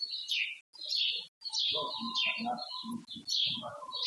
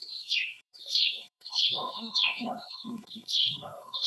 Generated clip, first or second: second